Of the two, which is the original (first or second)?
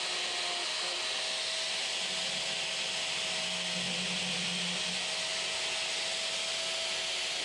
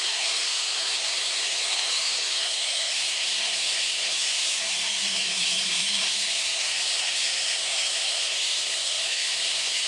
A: first